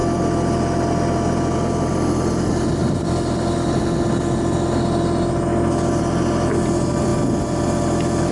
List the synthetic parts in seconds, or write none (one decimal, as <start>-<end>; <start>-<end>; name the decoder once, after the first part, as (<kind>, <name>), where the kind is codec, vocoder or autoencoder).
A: none

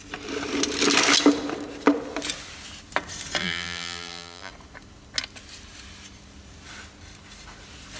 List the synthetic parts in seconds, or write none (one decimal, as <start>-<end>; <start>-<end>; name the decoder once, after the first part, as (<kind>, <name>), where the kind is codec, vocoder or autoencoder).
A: 3.4-4.5 (vocoder, BigVGAN v2)

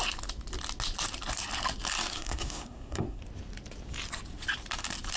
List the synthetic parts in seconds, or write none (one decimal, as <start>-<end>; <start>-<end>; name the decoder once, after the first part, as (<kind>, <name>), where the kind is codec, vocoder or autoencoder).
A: 2.1-3.2 (codec, SNAC)

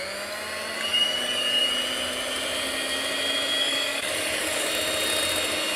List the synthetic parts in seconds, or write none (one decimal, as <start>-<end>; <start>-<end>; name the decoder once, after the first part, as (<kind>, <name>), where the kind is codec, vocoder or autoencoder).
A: 0.9-1.7 (codec, DAC); 3.6-4.7

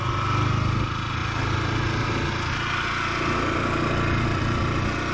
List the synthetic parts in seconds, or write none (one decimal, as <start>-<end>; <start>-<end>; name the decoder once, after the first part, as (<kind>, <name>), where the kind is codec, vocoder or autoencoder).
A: none

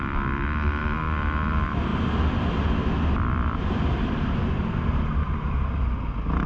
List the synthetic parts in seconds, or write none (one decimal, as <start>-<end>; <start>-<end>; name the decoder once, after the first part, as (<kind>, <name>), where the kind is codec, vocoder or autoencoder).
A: none

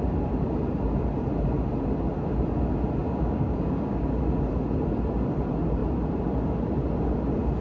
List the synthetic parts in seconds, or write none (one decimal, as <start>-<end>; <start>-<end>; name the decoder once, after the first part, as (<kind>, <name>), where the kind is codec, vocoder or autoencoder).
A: 3.0-4.2 (codec, DAC)

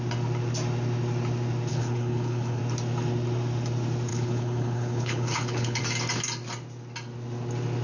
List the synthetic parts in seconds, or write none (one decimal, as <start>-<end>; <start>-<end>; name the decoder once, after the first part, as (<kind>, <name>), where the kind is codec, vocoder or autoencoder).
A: 1.7-2.6 (codec, HILCodec); 4.1-5.8